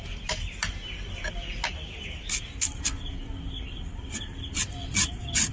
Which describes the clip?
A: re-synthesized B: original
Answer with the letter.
B